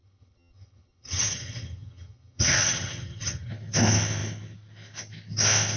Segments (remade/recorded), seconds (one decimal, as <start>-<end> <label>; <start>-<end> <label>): 0.0-3.5 remade; 3.5-5.8 recorded